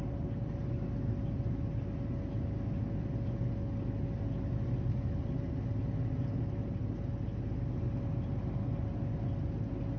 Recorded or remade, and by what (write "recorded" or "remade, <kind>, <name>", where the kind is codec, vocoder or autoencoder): recorded